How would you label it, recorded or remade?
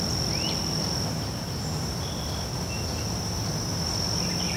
recorded